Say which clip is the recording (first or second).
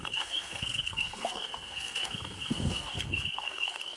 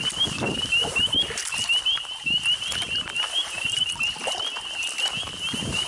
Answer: second